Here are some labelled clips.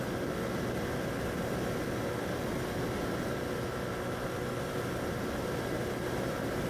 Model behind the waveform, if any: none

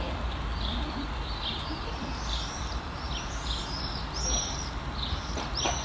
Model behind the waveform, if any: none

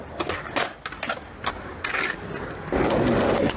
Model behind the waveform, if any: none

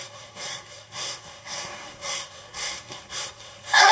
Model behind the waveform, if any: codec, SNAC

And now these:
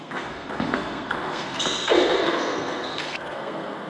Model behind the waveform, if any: codec, SNAC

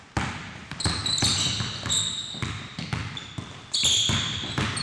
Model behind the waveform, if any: none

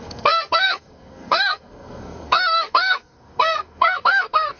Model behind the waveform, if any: codec, SNAC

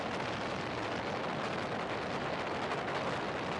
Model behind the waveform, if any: none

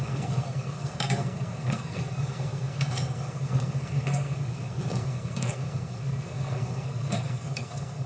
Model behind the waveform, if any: codec, SNAC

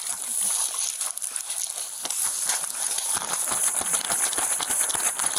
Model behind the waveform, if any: none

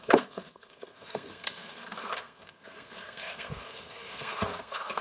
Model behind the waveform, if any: codec, SNAC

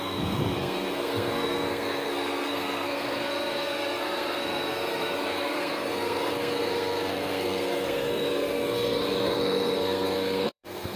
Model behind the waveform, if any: codec, SNAC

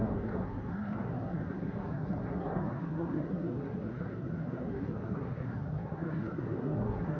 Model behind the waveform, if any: codec, SNAC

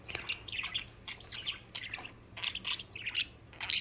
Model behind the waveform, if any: none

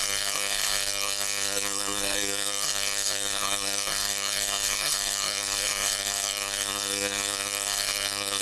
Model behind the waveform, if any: codec, SNAC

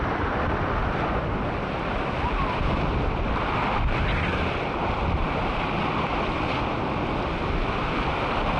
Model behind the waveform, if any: none